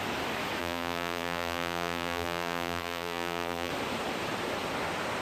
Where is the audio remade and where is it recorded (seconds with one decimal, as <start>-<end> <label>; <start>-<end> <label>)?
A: 0.0-0.6 recorded; 0.6-3.7 remade; 3.7-5.2 recorded